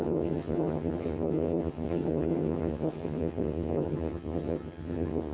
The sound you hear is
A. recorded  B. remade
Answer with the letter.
B